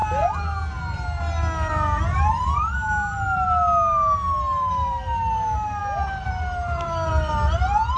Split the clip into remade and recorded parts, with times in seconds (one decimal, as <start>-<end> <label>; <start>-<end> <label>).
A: 0.0-8.0 recorded